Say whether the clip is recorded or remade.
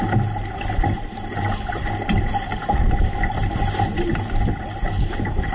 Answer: recorded